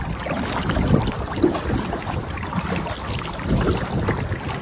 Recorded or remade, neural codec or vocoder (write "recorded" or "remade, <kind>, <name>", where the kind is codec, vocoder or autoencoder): recorded